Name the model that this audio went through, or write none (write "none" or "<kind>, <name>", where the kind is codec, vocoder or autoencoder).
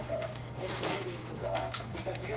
codec, SNAC